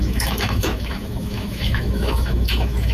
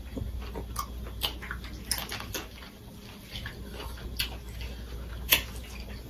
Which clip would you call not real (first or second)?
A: first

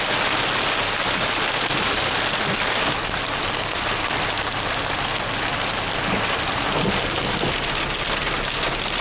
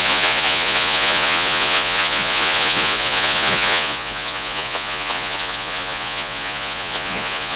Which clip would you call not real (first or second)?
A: second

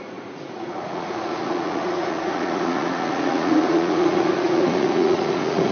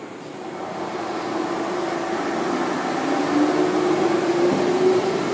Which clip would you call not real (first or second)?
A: first